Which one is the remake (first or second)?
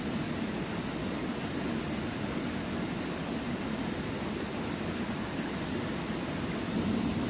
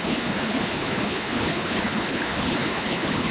second